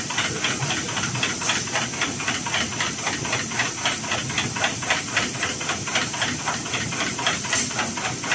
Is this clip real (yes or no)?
yes